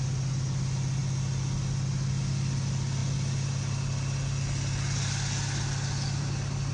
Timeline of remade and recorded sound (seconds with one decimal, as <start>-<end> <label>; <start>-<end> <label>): 0.0-6.7 recorded